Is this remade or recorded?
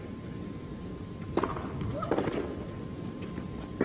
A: recorded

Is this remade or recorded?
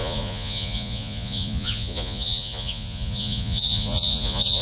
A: remade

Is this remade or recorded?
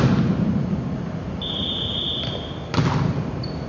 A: recorded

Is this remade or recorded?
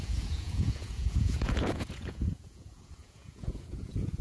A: remade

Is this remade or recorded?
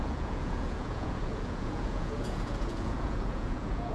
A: remade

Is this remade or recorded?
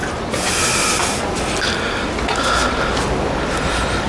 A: recorded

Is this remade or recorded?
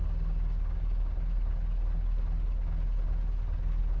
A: recorded